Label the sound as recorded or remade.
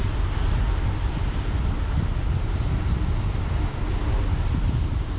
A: recorded